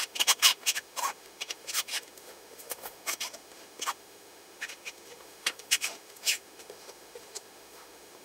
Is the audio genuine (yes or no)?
no